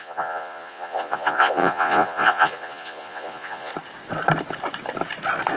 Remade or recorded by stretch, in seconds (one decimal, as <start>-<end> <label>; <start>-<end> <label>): 0.0-3.7 remade; 3.7-5.6 recorded